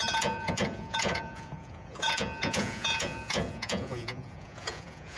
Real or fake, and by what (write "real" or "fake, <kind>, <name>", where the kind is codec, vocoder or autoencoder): fake, vocoder, Vocos